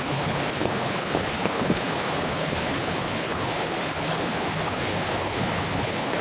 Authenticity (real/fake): fake